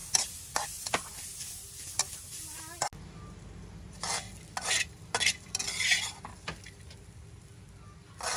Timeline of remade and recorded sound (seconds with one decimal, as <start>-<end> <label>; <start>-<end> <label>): 0.0-8.4 recorded